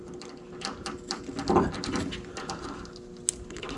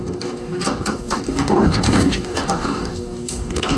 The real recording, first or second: first